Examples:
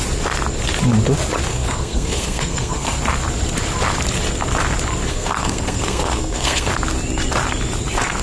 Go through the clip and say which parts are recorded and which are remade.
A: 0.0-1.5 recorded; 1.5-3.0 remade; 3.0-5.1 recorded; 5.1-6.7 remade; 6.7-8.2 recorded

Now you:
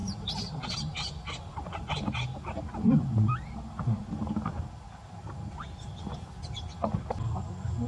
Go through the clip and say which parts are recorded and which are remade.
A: 0.0-7.9 recorded

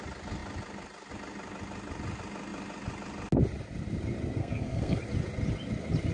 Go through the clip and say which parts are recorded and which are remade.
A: 0.0-4.4 recorded; 4.4-5.0 remade; 5.0-6.1 recorded

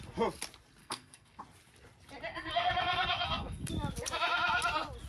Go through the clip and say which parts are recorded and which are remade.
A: 0.0-0.8 recorded; 0.8-1.4 remade; 1.4-2.3 recorded; 2.3-3.7 remade; 3.7-5.1 recorded